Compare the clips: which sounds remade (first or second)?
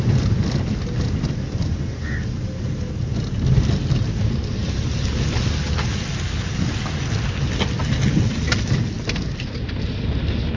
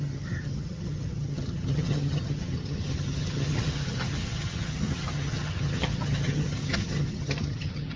second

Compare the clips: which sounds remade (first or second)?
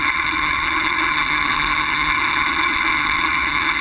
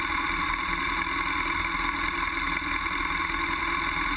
first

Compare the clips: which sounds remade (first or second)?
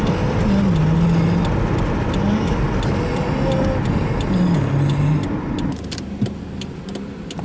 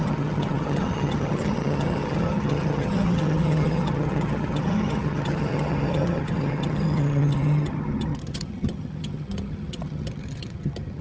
second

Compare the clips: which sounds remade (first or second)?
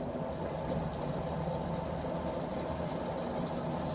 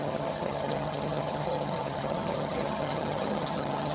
second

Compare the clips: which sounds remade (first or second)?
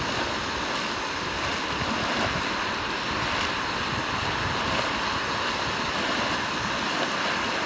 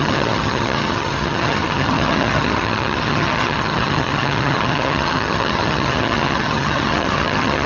second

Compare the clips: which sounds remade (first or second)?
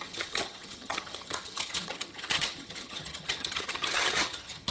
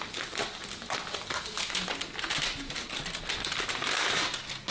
first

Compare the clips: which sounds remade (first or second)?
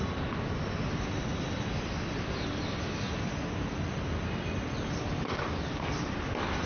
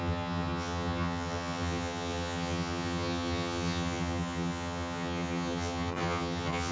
second